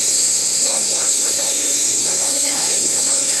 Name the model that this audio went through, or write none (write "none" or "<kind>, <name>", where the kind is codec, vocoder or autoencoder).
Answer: codec, SNAC